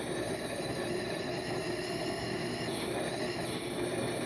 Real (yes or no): yes